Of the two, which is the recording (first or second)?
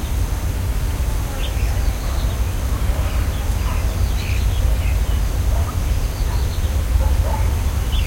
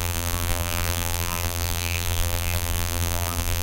first